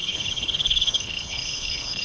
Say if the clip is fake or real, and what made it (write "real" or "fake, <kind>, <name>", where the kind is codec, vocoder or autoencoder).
fake, codec, HILCodec